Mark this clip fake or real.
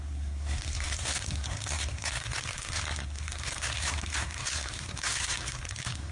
fake